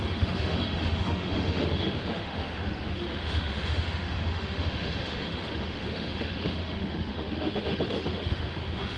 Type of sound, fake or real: fake